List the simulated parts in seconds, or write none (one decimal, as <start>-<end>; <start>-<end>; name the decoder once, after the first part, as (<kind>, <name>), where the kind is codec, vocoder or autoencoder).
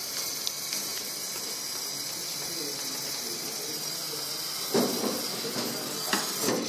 none